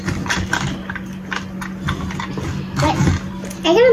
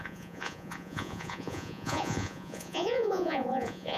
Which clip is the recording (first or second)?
first